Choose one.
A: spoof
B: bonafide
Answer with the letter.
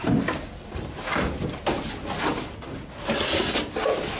B